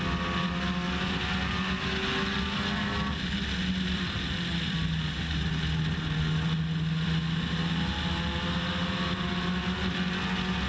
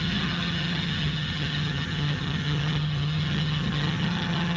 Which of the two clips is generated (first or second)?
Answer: second